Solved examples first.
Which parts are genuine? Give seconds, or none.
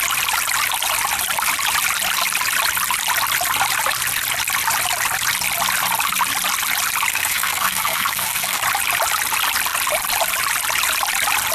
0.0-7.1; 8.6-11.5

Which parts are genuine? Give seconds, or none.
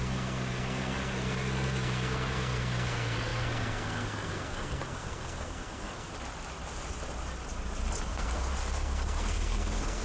6.1-8.1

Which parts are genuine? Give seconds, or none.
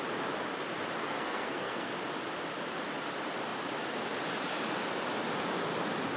0.0-1.0; 1.9-6.2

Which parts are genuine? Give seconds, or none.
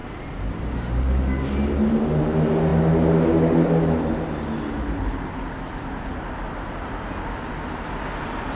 0.0-8.5